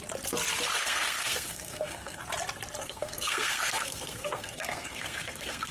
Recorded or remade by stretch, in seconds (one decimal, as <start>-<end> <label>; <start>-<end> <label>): 0.0-0.8 recorded; 0.8-2.2 remade; 2.2-2.8 recorded; 2.8-5.7 remade